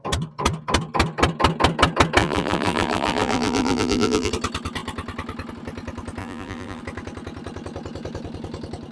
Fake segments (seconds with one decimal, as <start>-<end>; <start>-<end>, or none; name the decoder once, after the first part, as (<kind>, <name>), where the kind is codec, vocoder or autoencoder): 2.2-4.3 (vocoder, BigVGAN v2); 6.2-6.8

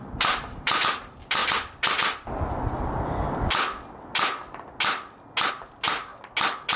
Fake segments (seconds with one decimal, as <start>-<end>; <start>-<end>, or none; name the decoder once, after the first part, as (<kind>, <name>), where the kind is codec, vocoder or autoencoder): 0.0-1.4 (vocoder, BigVGAN v2); 5.5-6.1

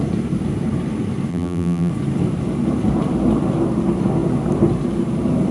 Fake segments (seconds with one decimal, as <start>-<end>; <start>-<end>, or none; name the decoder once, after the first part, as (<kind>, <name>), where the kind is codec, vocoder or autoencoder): 1.3-1.9 (vocoder, BigVGAN v2)

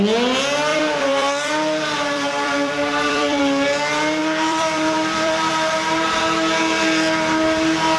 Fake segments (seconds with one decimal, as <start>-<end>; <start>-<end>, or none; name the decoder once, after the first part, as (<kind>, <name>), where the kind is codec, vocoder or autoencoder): 0.7-3.4 (vocoder, BigVGAN v2); 4.2-5.5

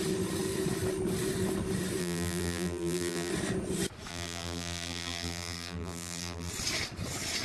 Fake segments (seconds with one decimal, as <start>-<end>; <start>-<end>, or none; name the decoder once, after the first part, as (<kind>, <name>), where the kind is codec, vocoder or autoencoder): 2.0-3.3 (vocoder, BigVGAN v2); 4.1-6.5

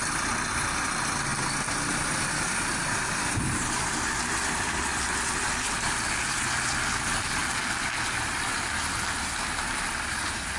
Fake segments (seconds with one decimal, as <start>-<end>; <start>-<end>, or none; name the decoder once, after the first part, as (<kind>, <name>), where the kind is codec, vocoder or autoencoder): 0.0-1.3 (vocoder, BigVGAN v2); 1.9-7.4; 9.9-10.6